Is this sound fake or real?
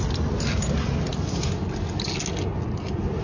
real